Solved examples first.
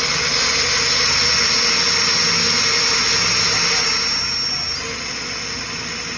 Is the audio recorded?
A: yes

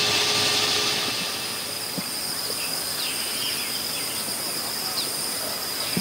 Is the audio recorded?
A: yes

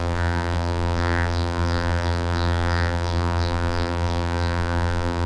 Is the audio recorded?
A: no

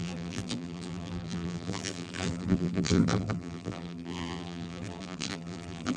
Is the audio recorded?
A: no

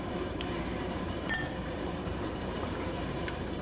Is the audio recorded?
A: no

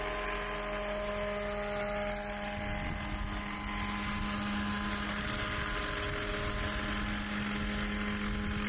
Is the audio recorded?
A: yes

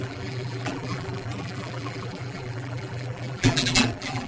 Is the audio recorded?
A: no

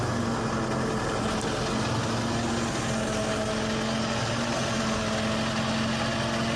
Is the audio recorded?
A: yes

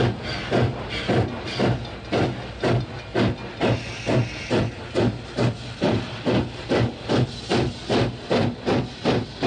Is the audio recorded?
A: yes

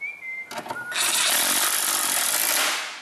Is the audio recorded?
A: yes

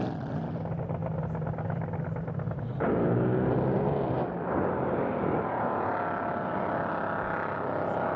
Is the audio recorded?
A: yes